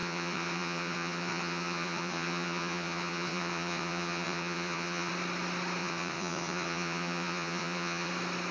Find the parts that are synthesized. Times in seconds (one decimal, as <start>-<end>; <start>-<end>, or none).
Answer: 0.0-5.1; 5.8-8.1